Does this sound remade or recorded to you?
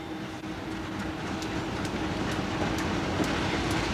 recorded